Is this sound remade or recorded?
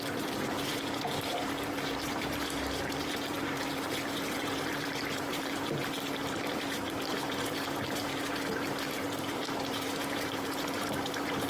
remade